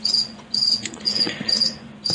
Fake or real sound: fake